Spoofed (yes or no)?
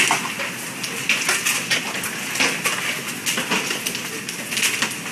no